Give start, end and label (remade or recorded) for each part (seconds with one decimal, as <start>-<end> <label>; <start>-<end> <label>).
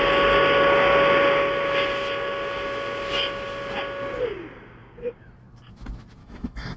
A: 0.0-6.2 recorded; 6.2-6.8 remade